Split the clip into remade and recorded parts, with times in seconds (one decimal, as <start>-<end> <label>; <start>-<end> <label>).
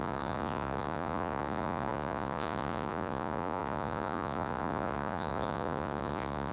0.0-6.5 remade